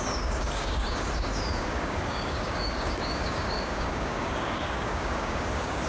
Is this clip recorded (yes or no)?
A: no